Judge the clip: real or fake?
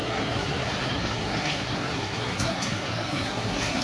fake